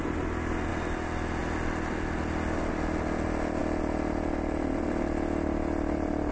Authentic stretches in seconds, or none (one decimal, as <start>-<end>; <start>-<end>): 0.0-6.3